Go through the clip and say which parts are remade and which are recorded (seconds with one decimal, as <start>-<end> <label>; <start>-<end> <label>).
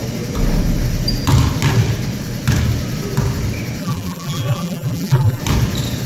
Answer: 0.0-3.8 recorded; 3.8-5.4 remade; 5.4-6.1 recorded